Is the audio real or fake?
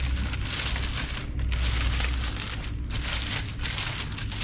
real